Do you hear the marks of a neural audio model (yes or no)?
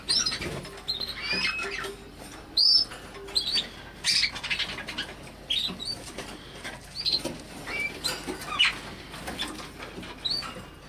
no